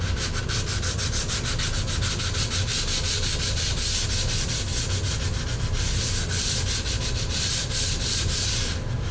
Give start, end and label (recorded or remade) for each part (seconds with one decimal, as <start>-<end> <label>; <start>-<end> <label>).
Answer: 0.0-9.1 recorded